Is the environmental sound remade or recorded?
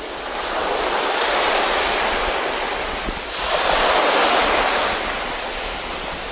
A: recorded